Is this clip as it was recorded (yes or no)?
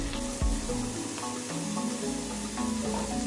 yes